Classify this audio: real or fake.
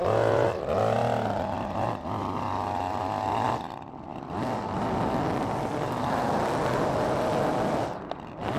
real